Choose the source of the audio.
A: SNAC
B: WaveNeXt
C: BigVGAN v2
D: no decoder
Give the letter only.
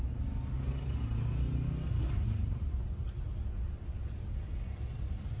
D